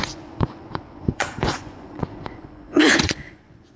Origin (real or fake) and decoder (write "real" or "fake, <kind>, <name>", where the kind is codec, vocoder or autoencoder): fake, vocoder, Vocos